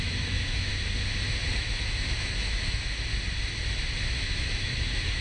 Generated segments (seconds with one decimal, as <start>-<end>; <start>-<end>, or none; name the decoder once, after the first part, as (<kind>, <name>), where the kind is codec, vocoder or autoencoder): 0.0-0.7 (autoencoder, DAC-VAE); 1.6-3.1; 4.2-5.2